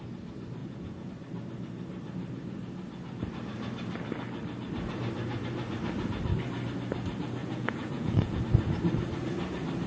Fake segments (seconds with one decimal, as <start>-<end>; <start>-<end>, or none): 0.6-1.1; 7.4-8.4